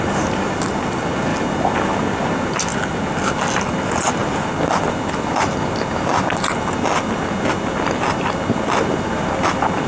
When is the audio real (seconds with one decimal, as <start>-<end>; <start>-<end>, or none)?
0.0-1.3; 2.0-4.2; 4.8-9.9

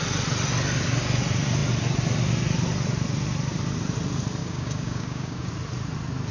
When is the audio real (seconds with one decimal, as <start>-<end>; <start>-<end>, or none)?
0.0-4.4; 5.5-6.3

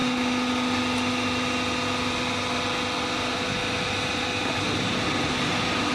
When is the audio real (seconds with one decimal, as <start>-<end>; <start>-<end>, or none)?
0.0-5.9

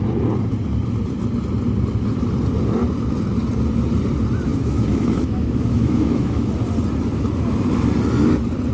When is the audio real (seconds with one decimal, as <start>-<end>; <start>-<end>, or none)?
0.0-4.5; 6.5-8.7

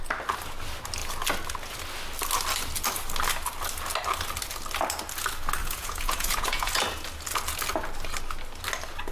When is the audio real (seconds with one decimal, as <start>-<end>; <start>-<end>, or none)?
0.0-5.6; 6.8-9.1